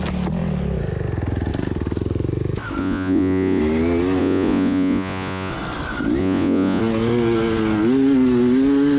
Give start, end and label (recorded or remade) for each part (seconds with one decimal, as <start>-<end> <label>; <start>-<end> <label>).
0.0-2.8 recorded; 2.8-3.6 remade; 3.6-4.2 recorded; 4.2-5.5 remade; 5.5-6.2 recorded; 6.2-6.8 remade; 6.8-9.0 recorded